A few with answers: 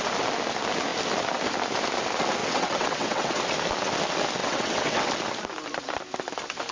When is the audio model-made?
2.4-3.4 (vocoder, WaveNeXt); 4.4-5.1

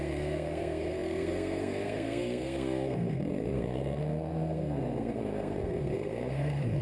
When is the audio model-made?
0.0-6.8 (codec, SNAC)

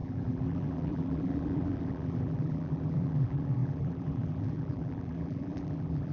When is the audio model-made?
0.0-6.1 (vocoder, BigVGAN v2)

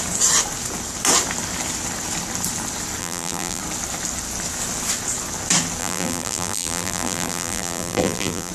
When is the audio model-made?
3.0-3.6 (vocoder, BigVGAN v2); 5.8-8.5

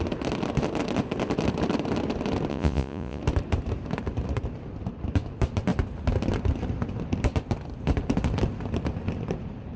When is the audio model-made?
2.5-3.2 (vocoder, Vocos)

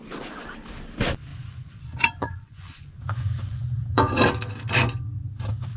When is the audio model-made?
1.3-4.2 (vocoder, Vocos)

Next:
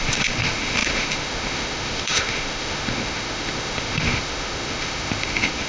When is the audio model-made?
0.0-5.7 (autoencoder, DAC-VAE)

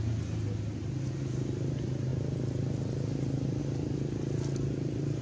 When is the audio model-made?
none